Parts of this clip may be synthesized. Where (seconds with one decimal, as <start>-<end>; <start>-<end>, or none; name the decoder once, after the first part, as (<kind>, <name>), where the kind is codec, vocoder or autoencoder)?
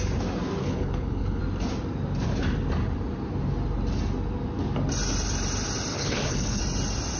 0.6-1.4 (codec, HILCodec); 5.9-6.6